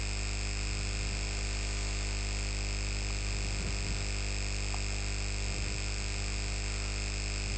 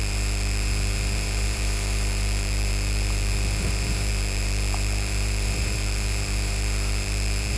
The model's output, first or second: second